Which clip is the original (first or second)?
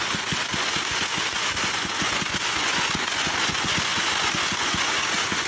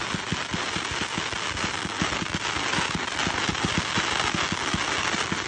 second